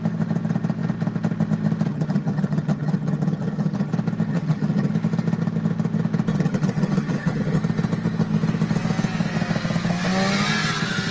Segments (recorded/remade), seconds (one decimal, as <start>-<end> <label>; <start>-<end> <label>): 0.0-1.9 recorded; 1.9-3.9 remade; 3.9-4.3 recorded; 4.3-4.9 remade; 4.9-6.3 recorded; 6.3-7.6 remade; 7.6-11.1 recorded